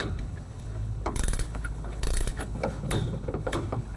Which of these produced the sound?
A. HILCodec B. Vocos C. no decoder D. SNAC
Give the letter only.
A